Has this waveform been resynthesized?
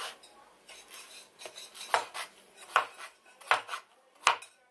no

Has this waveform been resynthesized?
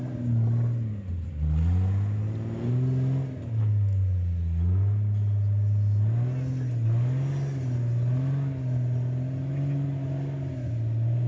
no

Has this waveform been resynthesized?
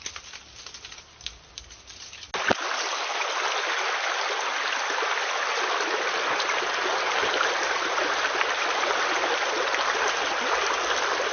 no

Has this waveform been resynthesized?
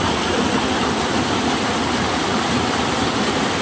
yes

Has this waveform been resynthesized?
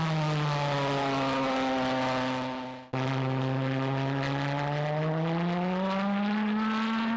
no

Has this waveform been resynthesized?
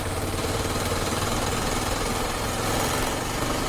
yes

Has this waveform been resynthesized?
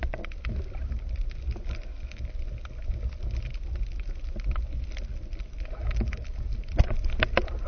no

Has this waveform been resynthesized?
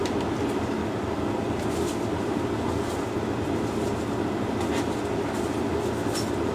no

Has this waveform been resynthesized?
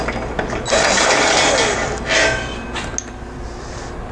no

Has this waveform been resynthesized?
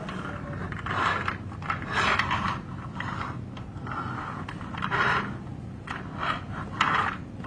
no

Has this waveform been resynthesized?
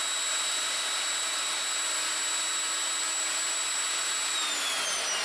no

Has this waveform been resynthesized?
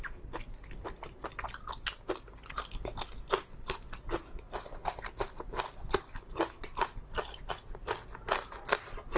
no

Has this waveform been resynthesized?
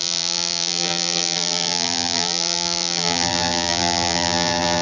yes